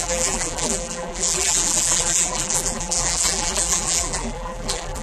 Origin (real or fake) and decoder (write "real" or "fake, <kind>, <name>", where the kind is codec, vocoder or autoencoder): fake, vocoder, BigVGAN v2